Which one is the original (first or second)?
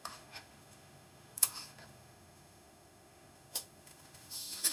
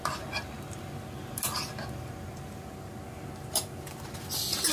second